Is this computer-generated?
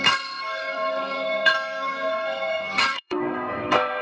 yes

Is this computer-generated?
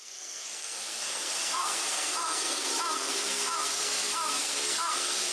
yes